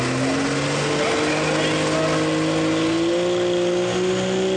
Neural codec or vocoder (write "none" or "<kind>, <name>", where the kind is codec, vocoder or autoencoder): none